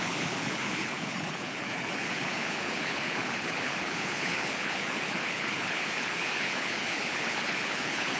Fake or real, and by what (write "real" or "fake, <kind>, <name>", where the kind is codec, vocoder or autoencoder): fake, codec, HILCodec